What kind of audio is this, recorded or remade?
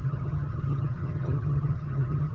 remade